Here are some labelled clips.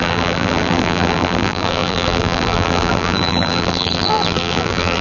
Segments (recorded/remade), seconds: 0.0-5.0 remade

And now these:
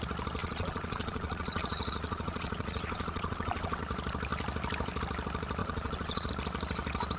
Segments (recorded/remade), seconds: 0.0-0.4 recorded; 0.4-3.8 remade; 3.8-5.6 recorded; 5.6-6.3 remade; 6.3-7.2 recorded